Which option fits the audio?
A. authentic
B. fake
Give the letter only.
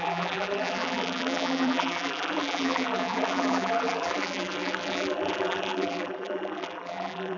B